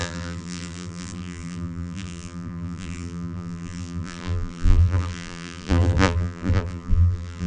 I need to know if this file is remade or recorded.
remade